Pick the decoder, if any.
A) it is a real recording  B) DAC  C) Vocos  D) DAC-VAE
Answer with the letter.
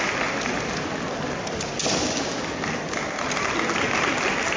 A